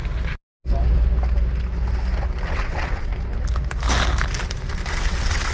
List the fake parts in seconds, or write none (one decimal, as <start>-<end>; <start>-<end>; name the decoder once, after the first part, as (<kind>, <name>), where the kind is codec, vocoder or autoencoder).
2.5-3.1 (vocoder, WaveNeXt); 4.9-5.5